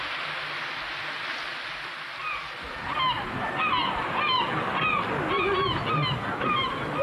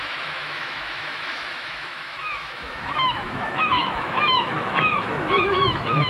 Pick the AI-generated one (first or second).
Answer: second